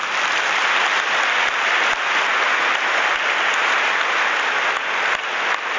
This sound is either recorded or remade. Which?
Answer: recorded